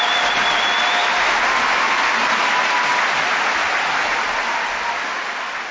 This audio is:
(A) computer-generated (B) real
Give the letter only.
B